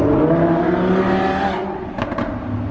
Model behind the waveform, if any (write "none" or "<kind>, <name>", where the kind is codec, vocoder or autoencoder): none